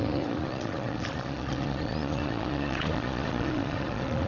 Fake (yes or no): yes